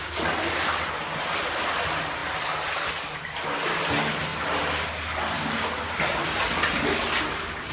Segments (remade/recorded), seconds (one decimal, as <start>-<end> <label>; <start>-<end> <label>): 0.0-7.7 recorded